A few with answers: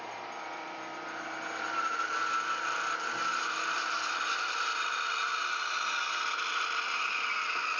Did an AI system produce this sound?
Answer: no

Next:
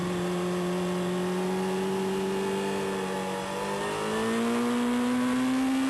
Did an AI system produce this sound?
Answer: no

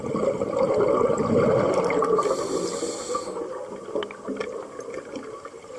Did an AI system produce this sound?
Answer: no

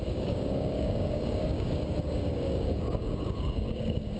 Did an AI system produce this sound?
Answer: yes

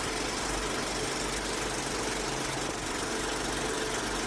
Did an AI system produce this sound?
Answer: no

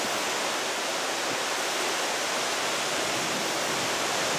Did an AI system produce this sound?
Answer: no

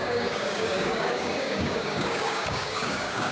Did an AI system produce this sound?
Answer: yes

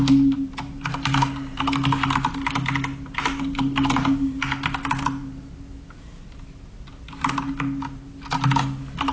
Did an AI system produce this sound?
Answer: no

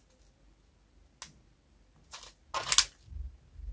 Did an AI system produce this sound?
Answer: no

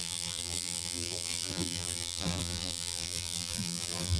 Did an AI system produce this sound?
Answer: yes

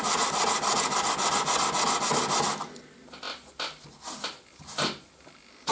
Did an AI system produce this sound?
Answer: no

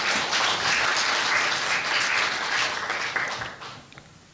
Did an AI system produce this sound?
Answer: no